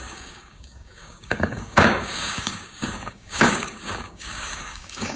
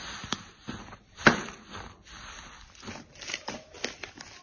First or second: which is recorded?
second